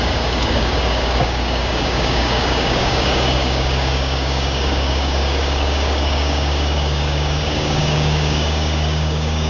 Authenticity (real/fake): fake